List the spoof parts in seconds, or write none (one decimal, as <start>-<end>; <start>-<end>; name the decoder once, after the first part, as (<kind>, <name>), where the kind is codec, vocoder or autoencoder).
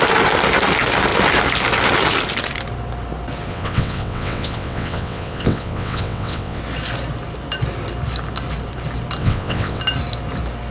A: 3.5-6.6 (vocoder, WaveNeXt); 9.2-9.8